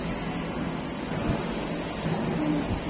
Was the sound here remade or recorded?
recorded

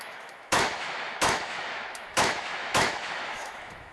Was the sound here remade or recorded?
remade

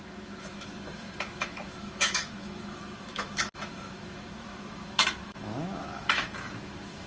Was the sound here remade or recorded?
remade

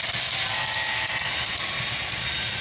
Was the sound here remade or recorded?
recorded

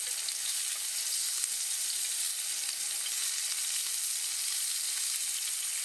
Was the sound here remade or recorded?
recorded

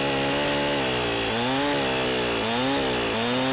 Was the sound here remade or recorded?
recorded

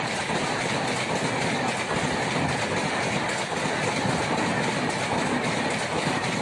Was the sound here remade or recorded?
recorded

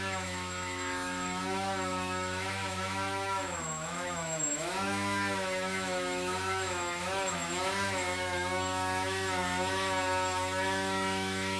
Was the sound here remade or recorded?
remade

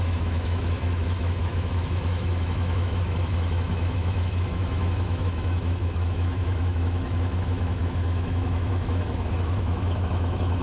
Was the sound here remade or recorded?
remade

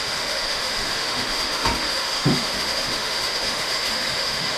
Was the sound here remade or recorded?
remade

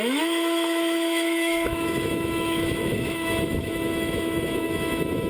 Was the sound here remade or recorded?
remade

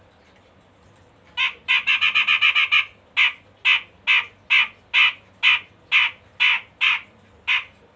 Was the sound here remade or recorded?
recorded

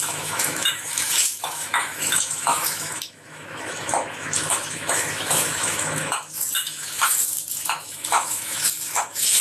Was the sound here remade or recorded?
remade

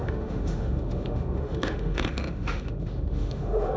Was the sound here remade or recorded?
remade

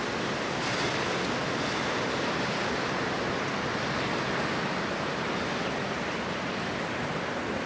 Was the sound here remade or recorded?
recorded